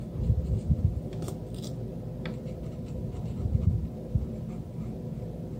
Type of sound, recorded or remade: recorded